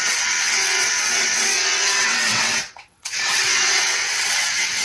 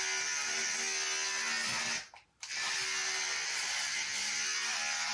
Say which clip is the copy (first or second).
first